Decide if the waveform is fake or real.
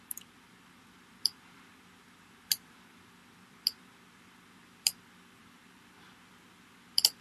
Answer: fake